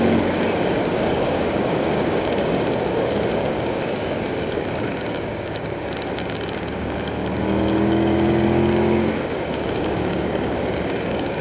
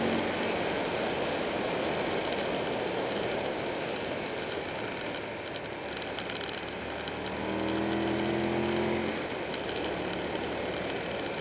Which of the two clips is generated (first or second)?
first